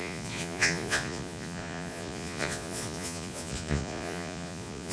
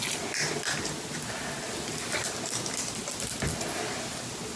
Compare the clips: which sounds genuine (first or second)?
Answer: second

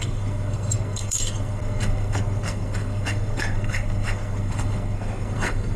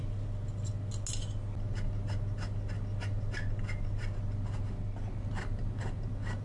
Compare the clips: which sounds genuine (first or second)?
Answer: second